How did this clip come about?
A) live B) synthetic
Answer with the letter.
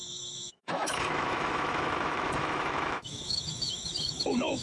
B